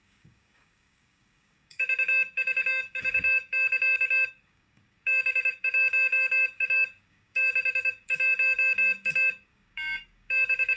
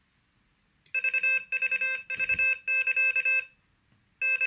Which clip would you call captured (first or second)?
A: second